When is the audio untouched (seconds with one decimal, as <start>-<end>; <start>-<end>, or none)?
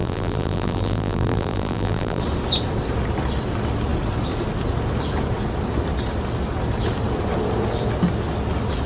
2.2-8.9